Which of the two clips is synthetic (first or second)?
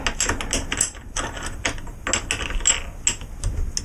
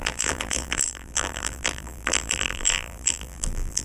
second